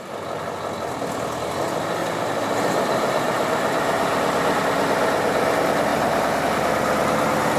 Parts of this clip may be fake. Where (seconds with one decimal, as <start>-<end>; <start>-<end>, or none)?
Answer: 2.0-4.6